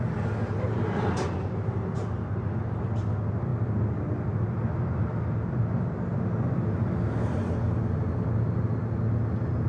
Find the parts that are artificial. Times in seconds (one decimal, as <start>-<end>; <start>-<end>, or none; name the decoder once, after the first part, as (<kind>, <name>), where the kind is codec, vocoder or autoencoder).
none